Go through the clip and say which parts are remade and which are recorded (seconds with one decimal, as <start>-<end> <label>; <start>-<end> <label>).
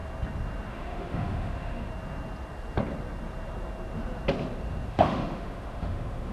0.0-0.7 recorded; 0.7-1.9 remade; 1.9-4.9 recorded; 4.9-6.3 remade